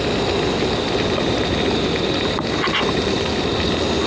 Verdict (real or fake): real